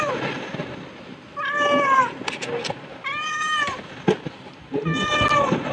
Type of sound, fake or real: real